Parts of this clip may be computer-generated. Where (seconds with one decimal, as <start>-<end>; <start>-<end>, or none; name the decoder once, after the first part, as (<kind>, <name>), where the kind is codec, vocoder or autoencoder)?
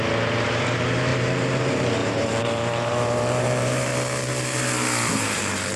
0.0-3.9 (vocoder, BigVGAN v2); 5.1-5.8